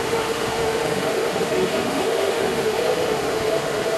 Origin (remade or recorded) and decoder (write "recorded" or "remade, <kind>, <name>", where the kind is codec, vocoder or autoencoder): remade, autoencoder, DAC-VAE